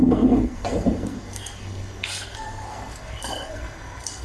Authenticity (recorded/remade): remade